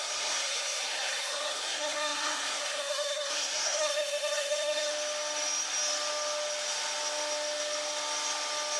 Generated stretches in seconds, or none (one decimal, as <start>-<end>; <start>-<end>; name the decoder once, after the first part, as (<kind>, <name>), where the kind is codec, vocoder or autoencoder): 0.0-4.9 (codec, SNAC)